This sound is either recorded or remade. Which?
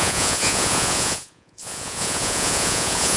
remade